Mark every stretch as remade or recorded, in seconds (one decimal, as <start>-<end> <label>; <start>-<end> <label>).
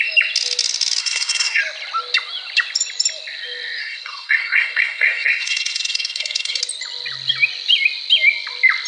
0.0-1.0 recorded; 1.0-1.6 remade; 1.6-3.8 recorded; 3.8-6.6 remade; 6.6-8.9 recorded